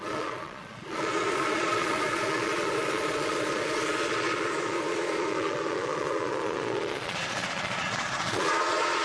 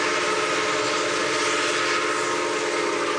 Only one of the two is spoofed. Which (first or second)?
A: first